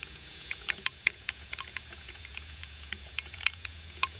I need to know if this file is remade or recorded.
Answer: remade